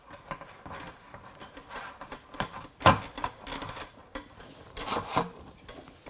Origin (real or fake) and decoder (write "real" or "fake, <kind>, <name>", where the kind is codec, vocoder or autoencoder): real